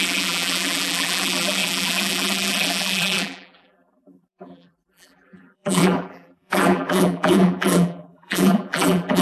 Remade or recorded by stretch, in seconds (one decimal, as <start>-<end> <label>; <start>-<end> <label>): 0.0-9.2 remade